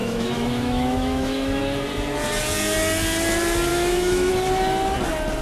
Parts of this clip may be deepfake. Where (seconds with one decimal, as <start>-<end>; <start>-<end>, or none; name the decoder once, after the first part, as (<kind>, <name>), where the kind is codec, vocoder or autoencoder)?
0.0-1.6 (autoencoder, DAC-VAE); 3.7-4.3